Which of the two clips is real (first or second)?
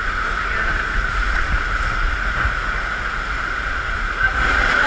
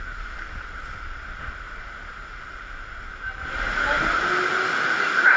second